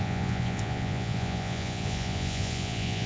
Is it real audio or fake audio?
fake